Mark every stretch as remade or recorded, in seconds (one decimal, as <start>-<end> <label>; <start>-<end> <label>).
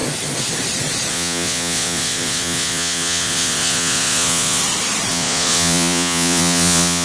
0.0-1.1 recorded; 1.1-4.6 remade; 4.6-5.1 recorded; 5.1-7.0 remade